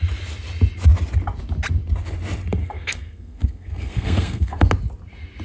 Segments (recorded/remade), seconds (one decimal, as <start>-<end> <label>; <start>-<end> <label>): 0.0-2.6 recorded; 2.6-4.7 remade; 4.7-5.4 recorded

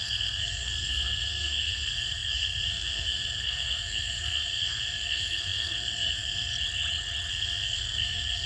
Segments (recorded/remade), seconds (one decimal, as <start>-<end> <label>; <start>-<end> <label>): 0.0-6.5 remade; 6.5-7.3 recorded; 7.3-8.5 remade